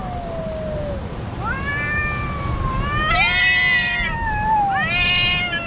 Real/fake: real